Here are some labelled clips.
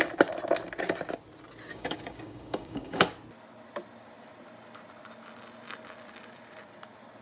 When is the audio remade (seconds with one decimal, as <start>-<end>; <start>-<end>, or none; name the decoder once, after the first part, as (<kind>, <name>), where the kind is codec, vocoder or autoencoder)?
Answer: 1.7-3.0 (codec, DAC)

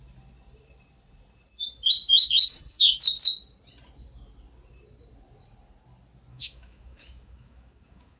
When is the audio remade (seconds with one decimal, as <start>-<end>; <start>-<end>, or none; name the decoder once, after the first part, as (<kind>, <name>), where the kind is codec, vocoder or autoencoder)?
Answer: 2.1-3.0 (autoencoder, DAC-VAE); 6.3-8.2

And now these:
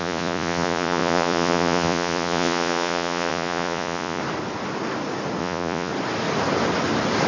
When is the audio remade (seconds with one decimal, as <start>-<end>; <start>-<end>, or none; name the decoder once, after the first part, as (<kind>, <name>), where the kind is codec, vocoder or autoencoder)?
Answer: 0.0-4.2 (vocoder, Vocos); 5.4-5.9

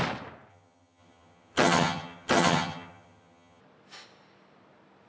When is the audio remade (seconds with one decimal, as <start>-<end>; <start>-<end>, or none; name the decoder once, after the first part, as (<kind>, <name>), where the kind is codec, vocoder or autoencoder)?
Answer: 0.5-3.6 (vocoder, HiFi-GAN)

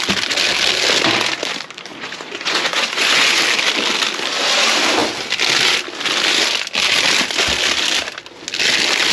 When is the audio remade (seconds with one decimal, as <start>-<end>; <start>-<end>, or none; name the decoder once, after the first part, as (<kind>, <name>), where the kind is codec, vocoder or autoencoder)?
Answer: 1.9-3.4 (vocoder, Vocos)

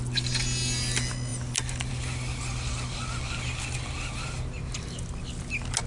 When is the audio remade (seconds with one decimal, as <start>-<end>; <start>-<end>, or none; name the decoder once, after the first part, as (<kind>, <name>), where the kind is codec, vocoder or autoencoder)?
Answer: none

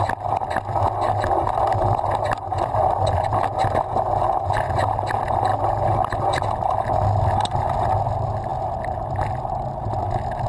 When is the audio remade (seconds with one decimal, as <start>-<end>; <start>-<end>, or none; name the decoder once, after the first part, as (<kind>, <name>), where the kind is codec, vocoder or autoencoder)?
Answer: none